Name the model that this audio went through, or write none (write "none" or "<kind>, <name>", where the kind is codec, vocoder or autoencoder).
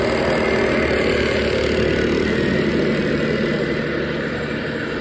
none